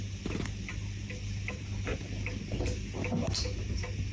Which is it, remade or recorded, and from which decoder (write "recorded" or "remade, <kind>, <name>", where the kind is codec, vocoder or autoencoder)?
recorded